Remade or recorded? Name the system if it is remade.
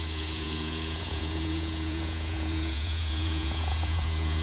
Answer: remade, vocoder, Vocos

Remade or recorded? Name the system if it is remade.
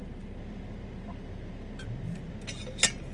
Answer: recorded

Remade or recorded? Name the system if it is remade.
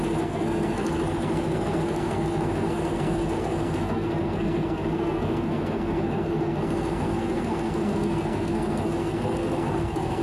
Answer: remade, codec, SNAC